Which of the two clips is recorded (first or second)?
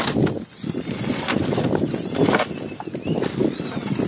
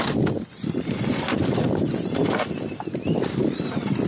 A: first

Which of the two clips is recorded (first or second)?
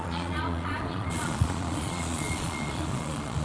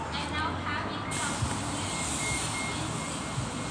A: second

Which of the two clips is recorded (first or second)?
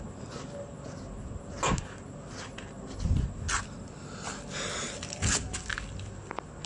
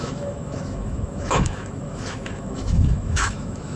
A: first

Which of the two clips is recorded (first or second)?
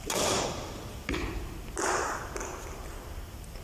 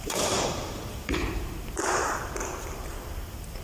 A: first